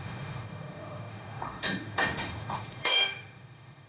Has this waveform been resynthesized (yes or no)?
yes